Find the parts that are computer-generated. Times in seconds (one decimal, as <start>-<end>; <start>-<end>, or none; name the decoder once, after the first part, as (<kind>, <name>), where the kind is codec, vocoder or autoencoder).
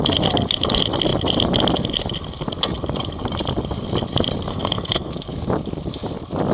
4.5-5.1 (codec, SNAC)